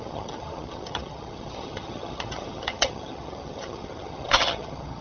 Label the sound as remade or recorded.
remade